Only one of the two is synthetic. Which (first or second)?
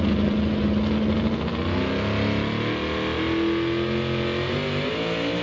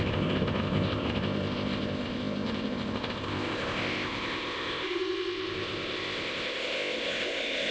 second